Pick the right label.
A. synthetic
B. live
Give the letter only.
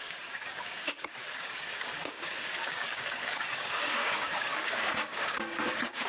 A